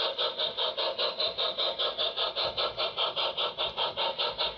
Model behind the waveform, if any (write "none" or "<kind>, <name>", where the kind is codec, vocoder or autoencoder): none